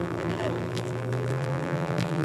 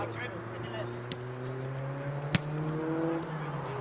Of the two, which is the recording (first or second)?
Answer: second